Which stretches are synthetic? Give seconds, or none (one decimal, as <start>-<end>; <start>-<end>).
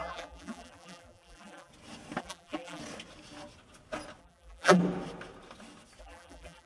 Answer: 0.0-1.7; 2.2-2.8; 4.2-4.8; 6.0-6.7